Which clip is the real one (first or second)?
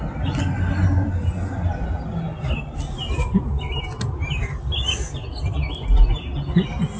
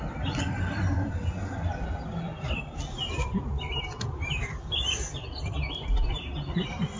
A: first